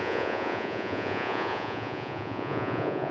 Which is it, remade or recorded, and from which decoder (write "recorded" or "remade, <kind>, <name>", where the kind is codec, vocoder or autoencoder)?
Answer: remade, vocoder, Vocos